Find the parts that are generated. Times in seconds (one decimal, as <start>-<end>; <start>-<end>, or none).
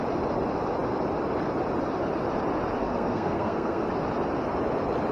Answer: 2.8-3.9